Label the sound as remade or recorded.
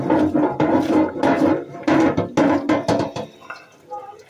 recorded